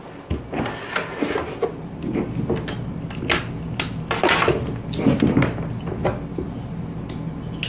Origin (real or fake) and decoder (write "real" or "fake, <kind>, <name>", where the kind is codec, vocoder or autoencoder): real